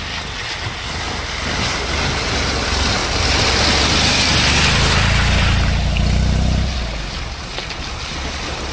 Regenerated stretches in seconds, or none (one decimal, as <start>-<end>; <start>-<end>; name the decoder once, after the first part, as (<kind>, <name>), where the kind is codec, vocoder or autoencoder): none